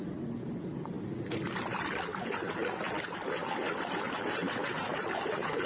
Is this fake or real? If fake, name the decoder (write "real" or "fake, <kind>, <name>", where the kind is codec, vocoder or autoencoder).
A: real